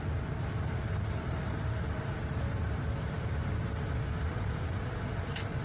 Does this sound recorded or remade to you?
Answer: remade